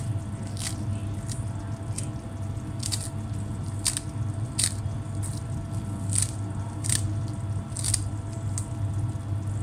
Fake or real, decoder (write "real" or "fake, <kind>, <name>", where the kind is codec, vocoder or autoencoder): real